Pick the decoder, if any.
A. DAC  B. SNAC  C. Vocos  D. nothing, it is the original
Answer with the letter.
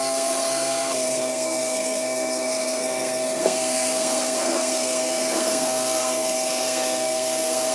B